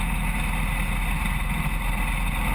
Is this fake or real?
real